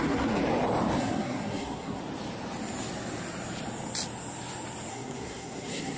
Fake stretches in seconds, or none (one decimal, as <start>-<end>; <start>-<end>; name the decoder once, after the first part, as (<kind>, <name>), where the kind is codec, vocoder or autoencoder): 0.0-0.4 (codec, SNAC); 1.0-2.0; 4.9-6.0